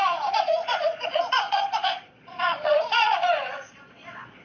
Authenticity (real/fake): fake